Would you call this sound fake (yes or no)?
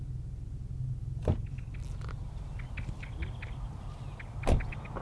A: no